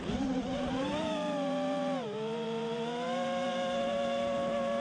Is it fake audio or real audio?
fake